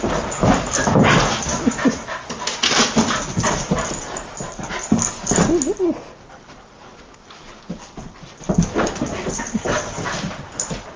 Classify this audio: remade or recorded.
recorded